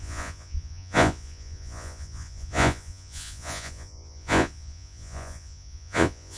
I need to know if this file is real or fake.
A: fake